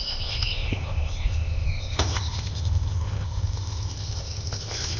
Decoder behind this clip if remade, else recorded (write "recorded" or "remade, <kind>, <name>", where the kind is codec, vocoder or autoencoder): remade, codec, ZipCodec